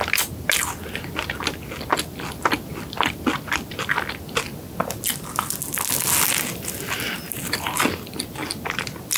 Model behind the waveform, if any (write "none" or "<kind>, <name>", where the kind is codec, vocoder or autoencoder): none